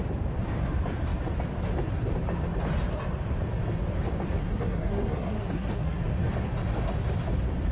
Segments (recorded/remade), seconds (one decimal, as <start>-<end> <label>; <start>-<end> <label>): 0.0-4.4 recorded; 4.4-6.0 remade; 6.0-7.7 recorded